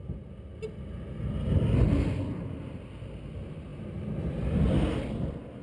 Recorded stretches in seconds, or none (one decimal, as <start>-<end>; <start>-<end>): 0.0-5.6